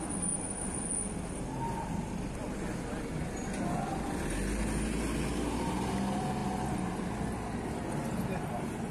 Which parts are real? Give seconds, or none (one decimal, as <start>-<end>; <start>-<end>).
0.0-8.9